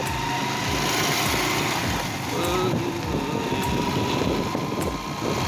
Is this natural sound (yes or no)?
yes